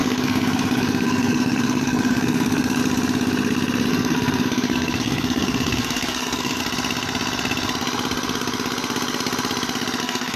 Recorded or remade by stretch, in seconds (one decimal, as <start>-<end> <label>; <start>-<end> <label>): 0.0-2.8 remade; 2.8-3.9 recorded; 3.9-6.6 remade; 6.6-10.0 recorded; 10.0-10.4 remade